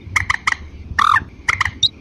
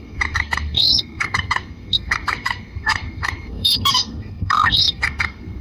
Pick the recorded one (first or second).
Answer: first